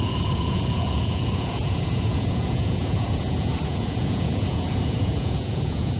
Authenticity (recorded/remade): remade